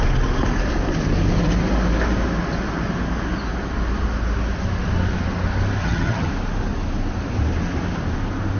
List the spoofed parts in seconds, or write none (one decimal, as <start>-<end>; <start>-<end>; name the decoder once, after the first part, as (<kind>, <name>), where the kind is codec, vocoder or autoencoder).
5.8-6.3 (vocoder, HiFi-GAN)